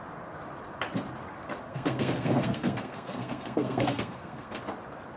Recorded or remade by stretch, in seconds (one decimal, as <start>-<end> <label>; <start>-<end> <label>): 0.0-1.7 recorded; 1.7-4.6 remade; 4.6-5.2 recorded